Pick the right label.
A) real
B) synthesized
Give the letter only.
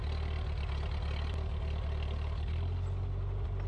A